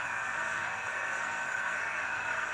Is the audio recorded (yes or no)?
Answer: no